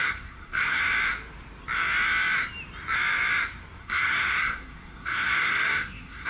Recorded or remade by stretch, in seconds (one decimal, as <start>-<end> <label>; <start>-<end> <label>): 0.0-0.8 remade; 0.8-3.8 recorded; 3.8-6.3 remade